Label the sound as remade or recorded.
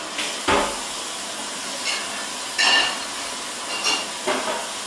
recorded